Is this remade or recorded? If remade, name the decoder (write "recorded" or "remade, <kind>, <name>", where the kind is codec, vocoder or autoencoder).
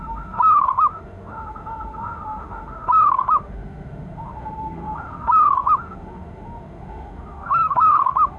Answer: remade, autoencoder, DAC-VAE